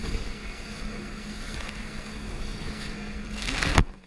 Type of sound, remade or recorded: remade